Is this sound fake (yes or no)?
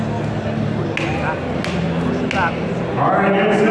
no